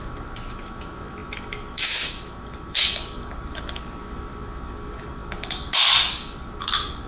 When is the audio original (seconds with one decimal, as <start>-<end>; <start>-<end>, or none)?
none